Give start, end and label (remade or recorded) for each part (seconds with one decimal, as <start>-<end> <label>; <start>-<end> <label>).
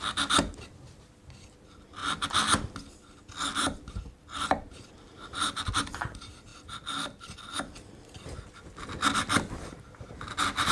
0.0-10.7 recorded